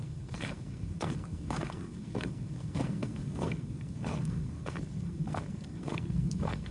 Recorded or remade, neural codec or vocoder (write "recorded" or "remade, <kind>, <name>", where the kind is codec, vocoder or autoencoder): remade, codec, SNAC